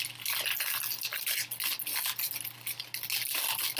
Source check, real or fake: real